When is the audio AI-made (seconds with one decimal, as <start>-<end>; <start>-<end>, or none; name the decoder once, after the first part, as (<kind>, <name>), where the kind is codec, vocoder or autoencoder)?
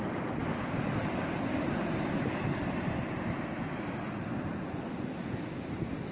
0.4-2.6 (vocoder, BigVGAN v2)